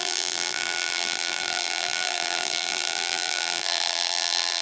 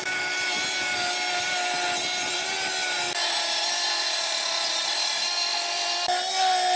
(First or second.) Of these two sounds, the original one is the second